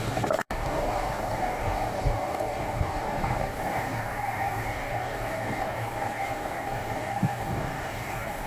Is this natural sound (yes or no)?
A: no